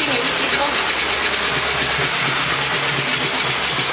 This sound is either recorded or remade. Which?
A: recorded